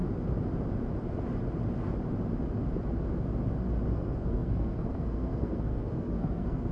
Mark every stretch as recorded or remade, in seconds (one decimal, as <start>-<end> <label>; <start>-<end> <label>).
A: 0.0-3.9 recorded; 3.9-6.7 remade